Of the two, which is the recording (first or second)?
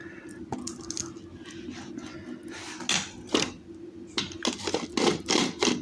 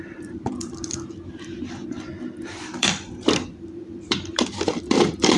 first